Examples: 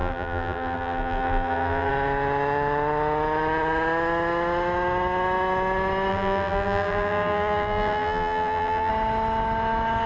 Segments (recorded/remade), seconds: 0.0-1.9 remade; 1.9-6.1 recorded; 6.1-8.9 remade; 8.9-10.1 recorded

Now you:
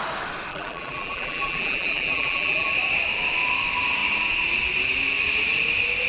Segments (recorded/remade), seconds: 0.0-0.5 recorded; 0.5-2.7 remade; 2.7-6.1 recorded

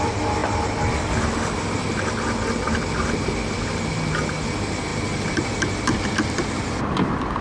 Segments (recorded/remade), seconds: 0.0-0.4 remade; 0.4-3.9 recorded; 3.9-7.4 remade